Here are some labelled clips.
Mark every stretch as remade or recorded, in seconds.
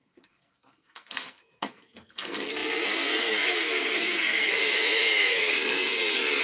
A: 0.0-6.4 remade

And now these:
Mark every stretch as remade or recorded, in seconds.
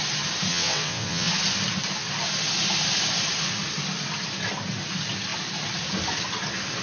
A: 0.0-0.5 recorded; 0.5-1.3 remade; 1.3-6.8 recorded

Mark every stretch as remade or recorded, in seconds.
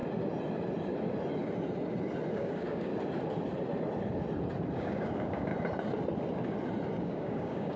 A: 0.0-2.3 recorded; 2.3-2.9 remade; 2.9-4.8 recorded; 4.8-5.5 remade; 5.5-7.0 recorded; 7.0-7.8 remade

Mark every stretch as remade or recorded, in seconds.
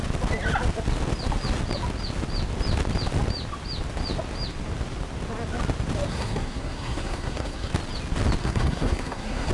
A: 0.0-6.1 recorded; 6.1-7.7 remade; 7.7-8.4 recorded; 8.4-9.5 remade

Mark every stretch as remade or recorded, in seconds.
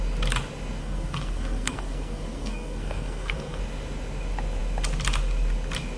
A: 0.0-0.8 recorded; 0.8-3.6 remade; 3.6-6.0 recorded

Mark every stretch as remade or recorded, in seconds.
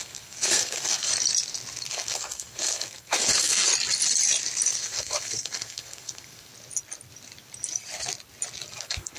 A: 0.0-1.1 remade; 1.1-1.9 recorded; 1.9-3.7 remade; 3.7-4.7 recorded; 4.7-6.5 remade; 6.5-8.7 recorded; 8.7-9.2 remade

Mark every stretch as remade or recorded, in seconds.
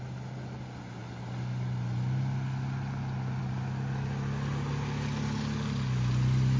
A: 0.0-6.6 recorded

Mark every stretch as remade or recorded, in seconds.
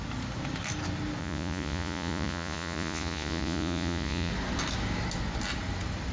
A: 0.0-1.2 recorded; 1.2-4.3 remade; 4.3-6.1 recorded